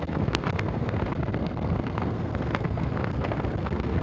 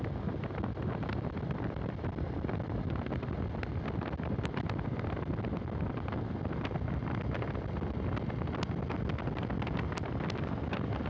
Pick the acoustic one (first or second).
second